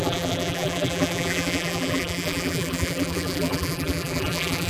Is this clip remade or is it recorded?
remade